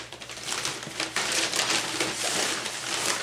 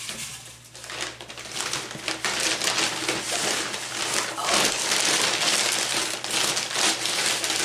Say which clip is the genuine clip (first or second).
second